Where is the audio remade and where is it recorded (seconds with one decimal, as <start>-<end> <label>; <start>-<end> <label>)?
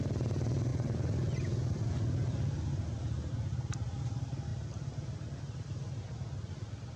0.0-7.0 recorded